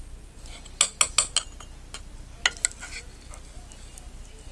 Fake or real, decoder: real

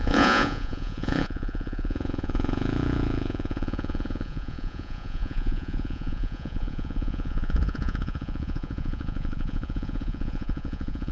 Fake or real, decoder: fake, vocoder, Vocos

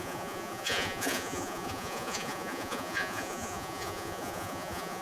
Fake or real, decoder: fake, vocoder, Vocos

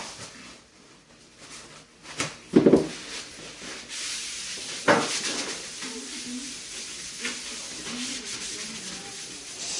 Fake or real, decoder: real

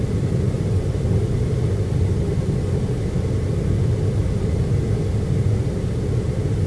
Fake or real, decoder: real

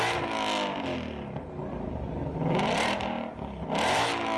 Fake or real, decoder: real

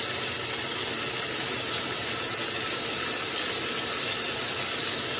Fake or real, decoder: real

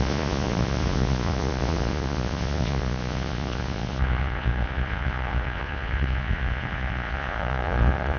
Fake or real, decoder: fake, vocoder, Vocos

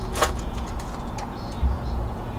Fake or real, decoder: fake, vocoder, Vocos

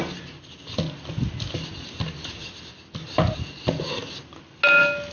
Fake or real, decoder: real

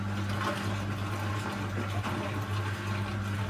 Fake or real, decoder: real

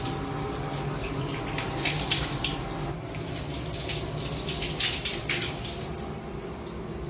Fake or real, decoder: real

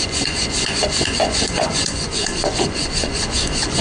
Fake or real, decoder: fake, vocoder, Vocos